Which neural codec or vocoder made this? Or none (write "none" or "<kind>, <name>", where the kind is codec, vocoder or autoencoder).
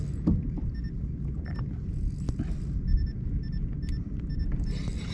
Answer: none